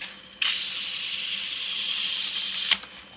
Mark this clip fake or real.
fake